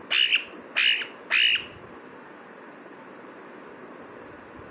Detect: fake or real real